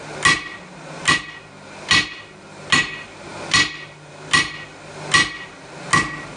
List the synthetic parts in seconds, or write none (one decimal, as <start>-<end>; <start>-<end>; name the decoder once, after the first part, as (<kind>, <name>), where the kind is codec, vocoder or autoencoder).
none